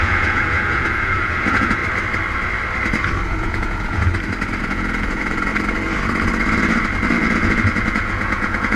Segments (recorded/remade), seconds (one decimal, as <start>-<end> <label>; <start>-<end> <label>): 0.0-1.8 remade; 1.8-3.3 recorded; 3.3-4.1 remade; 4.1-4.6 recorded; 4.6-5.5 remade; 5.5-7.1 recorded; 7.1-8.8 remade